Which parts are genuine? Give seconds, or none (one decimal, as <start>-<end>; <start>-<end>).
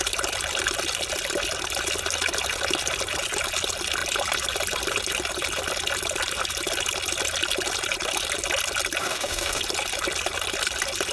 0.0-9.0; 9.6-11.1